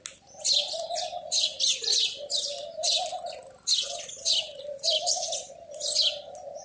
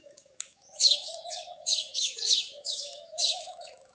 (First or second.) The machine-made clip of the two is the second